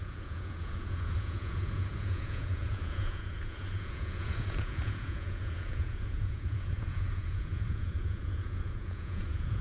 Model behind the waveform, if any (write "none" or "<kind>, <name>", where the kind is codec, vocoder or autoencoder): vocoder, Vocos